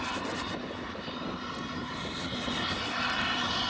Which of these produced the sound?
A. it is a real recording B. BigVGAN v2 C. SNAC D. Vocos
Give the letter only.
A